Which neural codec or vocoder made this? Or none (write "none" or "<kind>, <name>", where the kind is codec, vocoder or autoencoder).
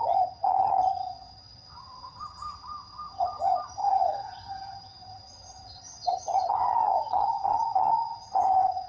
vocoder, HiFi-GAN